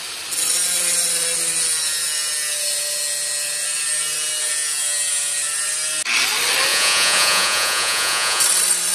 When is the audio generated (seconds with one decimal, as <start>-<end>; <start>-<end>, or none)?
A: 6.7-8.4